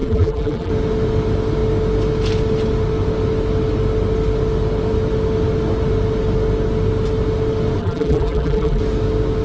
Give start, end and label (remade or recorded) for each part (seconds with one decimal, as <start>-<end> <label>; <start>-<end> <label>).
0.0-0.7 remade; 0.7-7.8 recorded; 7.8-8.8 remade; 8.8-9.4 recorded